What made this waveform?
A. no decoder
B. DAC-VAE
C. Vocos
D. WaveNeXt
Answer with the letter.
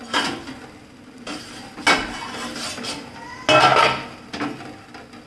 A